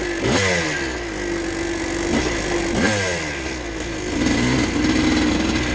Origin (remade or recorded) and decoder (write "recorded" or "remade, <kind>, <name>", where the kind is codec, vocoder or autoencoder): recorded